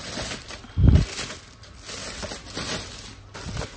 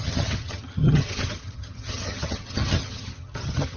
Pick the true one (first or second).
first